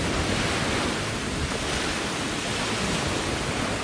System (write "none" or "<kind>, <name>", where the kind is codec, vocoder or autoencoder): none